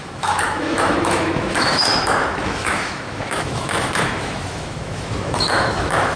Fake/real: fake